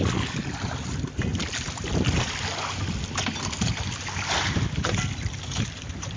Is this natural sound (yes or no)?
yes